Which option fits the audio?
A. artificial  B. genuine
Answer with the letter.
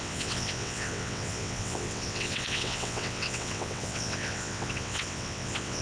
A